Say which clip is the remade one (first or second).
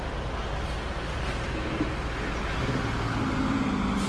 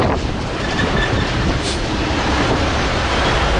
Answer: second